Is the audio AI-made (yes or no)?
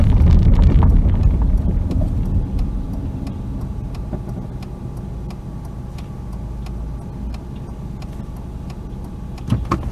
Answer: no